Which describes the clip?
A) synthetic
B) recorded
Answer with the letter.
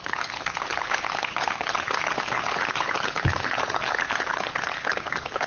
A